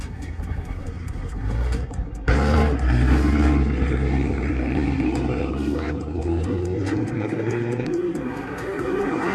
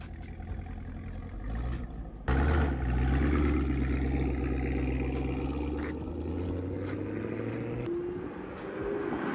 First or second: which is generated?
first